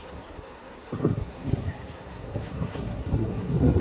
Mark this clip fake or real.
fake